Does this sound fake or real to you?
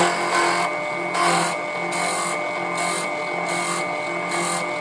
real